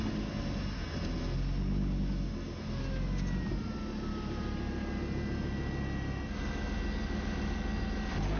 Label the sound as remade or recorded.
recorded